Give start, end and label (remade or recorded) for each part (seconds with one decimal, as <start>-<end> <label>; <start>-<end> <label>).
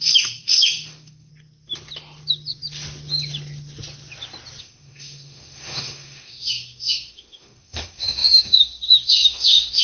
0.0-1.3 remade; 1.3-4.6 recorded; 4.6-9.8 remade